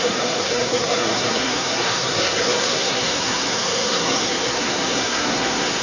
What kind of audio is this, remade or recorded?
remade